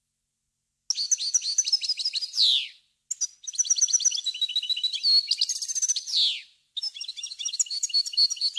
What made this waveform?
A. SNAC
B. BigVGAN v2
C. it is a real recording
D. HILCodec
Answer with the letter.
C